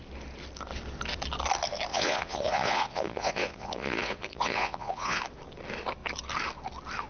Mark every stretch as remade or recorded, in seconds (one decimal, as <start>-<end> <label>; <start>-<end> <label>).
0.0-1.9 recorded; 1.9-5.2 remade; 5.2-7.1 recorded